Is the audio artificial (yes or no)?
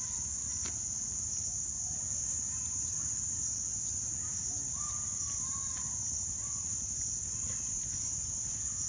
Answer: no